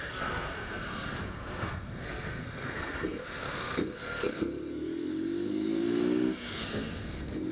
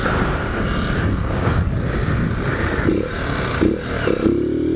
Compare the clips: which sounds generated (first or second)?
first